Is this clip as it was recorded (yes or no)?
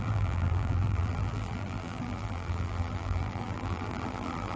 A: no